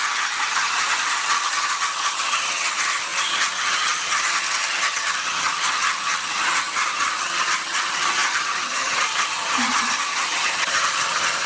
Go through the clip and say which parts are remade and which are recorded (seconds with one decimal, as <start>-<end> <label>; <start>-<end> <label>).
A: 0.0-11.5 remade